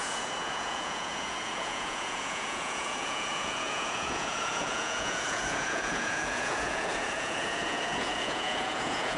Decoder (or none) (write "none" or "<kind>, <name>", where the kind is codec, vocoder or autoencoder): vocoder, Vocos